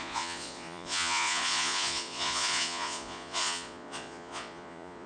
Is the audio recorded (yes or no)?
no